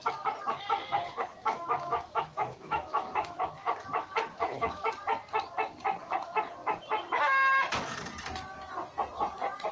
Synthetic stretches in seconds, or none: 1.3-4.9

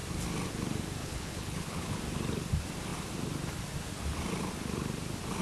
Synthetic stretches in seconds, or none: 1.0-2.0

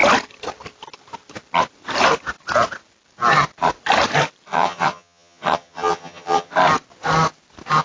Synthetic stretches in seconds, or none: 4.5-6.5

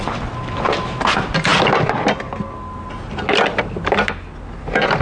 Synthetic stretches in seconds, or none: none

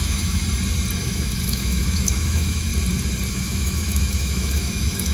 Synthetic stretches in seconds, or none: 0.0-0.4; 1.0-2.7; 3.3-5.1

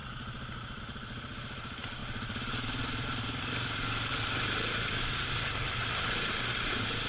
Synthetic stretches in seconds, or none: 0.0-7.1

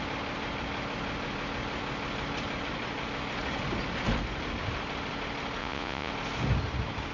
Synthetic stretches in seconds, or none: 5.6-6.1

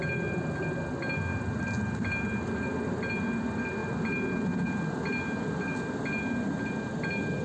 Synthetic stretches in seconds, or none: none